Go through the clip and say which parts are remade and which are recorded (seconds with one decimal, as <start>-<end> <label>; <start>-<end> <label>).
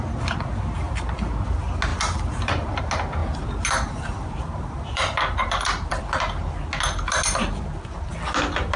0.0-1.9 recorded; 1.9-2.8 remade; 2.8-3.2 recorded; 3.2-6.0 remade; 6.0-8.8 recorded